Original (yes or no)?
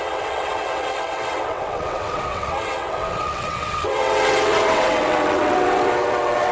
no